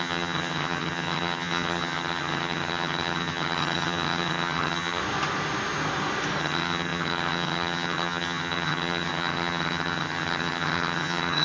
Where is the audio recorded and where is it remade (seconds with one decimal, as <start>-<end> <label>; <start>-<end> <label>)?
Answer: 0.0-5.0 remade; 5.0-6.4 recorded; 6.4-11.4 remade